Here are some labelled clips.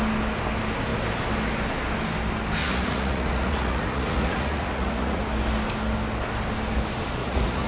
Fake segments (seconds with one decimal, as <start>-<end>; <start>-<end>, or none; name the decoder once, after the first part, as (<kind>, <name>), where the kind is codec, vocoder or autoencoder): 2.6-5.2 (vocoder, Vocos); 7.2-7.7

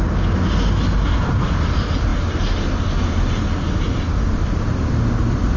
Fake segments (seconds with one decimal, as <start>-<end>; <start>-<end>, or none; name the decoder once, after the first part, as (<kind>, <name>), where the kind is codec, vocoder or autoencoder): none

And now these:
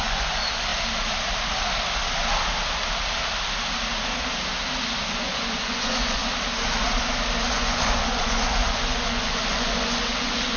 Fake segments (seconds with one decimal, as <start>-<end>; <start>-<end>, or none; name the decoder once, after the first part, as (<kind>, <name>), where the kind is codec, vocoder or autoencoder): 0.0-0.7 (vocoder, Vocos); 5.2-6.2; 7.5-10.6